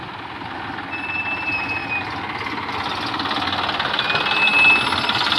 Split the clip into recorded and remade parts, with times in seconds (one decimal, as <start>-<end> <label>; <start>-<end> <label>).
0.0-5.4 recorded